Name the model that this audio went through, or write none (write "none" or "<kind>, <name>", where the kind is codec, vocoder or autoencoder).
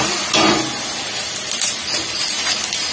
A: none